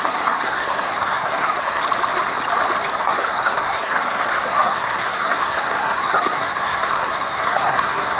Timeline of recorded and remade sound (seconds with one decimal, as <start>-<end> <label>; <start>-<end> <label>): 0.0-1.8 remade; 1.8-2.9 recorded; 2.9-8.2 remade